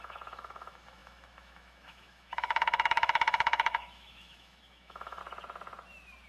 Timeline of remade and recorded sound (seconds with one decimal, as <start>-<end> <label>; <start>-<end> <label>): 0.0-5.2 remade; 5.2-6.3 recorded